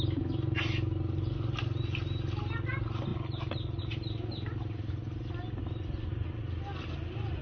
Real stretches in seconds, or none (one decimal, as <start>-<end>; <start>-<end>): 0.0-7.4